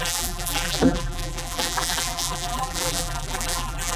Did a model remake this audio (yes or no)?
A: yes